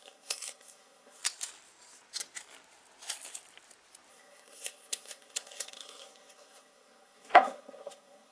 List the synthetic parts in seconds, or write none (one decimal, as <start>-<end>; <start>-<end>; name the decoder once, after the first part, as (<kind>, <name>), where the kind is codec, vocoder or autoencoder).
0.0-1.2 (codec, SNAC); 4.1-8.3